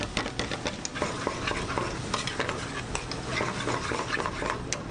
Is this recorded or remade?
recorded